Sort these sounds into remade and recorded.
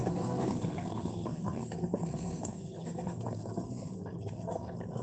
remade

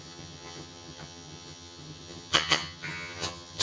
remade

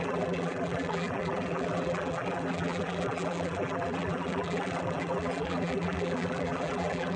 remade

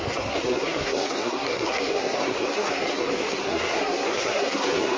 remade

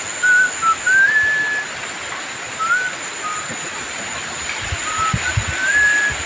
recorded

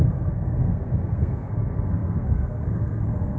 remade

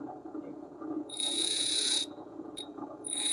remade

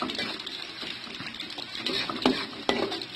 recorded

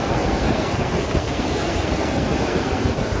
remade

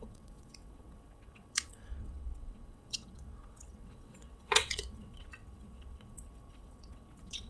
remade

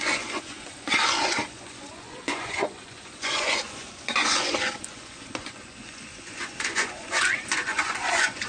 remade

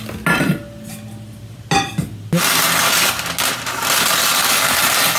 recorded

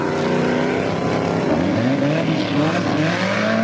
recorded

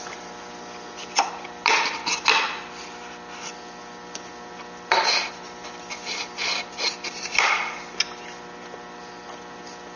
recorded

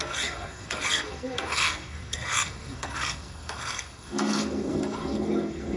remade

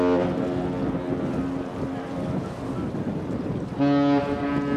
recorded